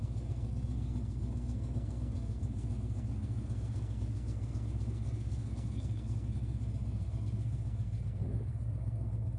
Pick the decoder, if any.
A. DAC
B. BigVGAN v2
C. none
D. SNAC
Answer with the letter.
D